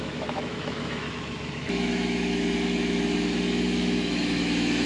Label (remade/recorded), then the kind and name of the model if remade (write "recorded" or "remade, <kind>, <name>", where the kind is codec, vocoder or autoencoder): remade, autoencoder, DAC-VAE